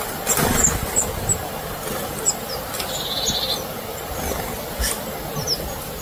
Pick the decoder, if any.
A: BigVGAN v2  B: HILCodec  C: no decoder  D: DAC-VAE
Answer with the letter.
C